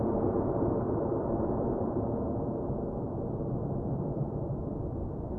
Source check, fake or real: fake